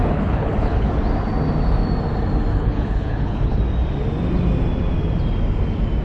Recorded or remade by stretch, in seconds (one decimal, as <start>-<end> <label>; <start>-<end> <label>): 0.0-0.9 remade; 0.9-2.5 recorded; 2.5-3.6 remade; 3.6-6.0 recorded